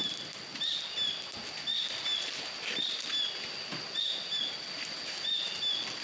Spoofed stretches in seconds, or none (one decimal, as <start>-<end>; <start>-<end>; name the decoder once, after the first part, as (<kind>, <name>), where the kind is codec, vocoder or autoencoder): none